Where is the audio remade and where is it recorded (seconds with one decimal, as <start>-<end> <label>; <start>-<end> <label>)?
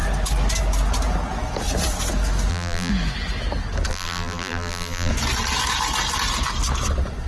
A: 0.0-2.5 recorded; 2.5-2.9 remade; 2.9-3.9 recorded; 3.9-5.1 remade; 5.1-7.3 recorded